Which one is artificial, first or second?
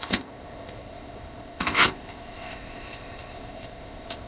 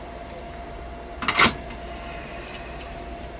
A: first